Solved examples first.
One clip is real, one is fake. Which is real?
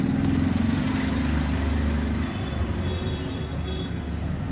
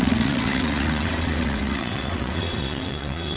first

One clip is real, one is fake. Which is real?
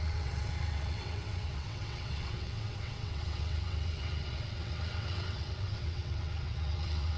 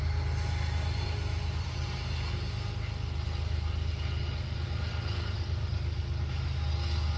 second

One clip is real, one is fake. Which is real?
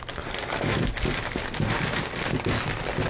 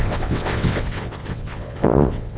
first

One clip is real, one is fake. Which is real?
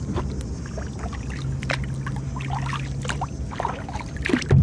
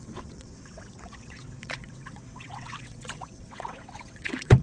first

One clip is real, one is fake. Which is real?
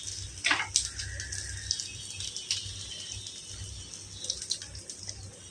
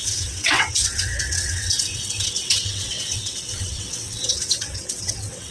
first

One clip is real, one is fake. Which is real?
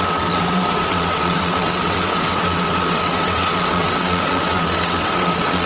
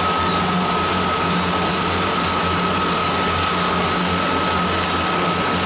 second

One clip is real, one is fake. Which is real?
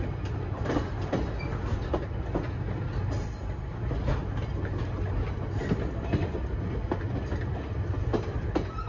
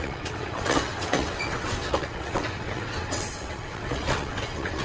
first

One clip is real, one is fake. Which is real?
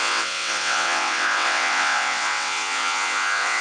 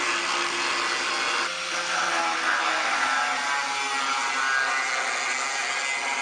second